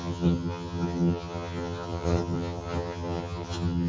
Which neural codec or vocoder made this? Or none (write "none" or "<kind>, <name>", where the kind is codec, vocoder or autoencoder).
vocoder, HiFi-GAN